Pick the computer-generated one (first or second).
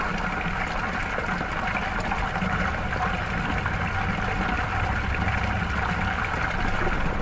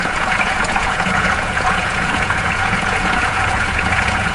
second